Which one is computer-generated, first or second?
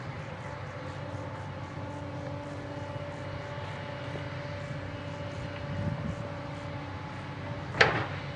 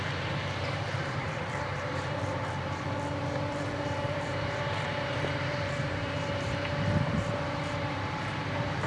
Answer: second